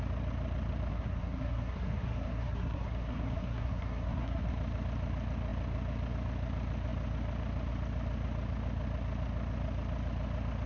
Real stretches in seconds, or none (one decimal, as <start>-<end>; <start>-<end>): 0.0-0.9; 4.5-10.7